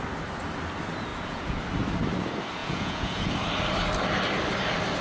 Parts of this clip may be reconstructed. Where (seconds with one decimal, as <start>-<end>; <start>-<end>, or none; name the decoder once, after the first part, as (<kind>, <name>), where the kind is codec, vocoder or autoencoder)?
1.1-1.6 (vocoder, Vocos); 2.6-3.3